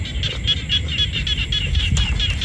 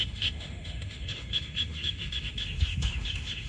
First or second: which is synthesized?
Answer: second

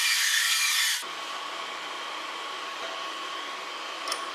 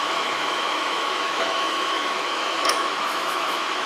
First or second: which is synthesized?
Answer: second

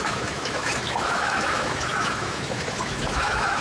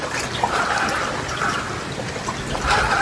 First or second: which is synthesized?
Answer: first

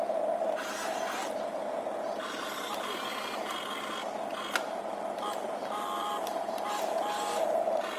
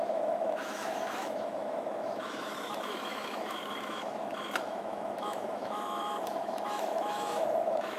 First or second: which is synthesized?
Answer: second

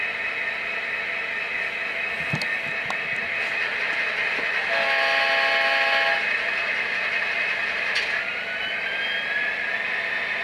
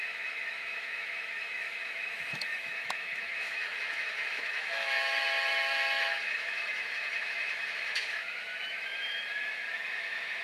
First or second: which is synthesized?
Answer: second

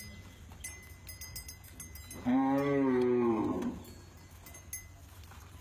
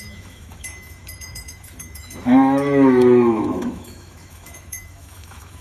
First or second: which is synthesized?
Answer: second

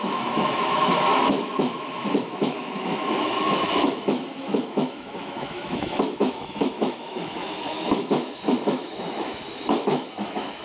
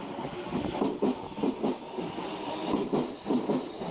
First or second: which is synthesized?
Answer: first